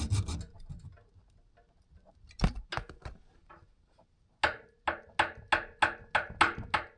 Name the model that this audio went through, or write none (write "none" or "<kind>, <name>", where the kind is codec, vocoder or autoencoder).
none